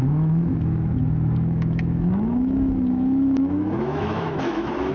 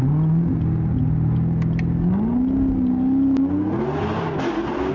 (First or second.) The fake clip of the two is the first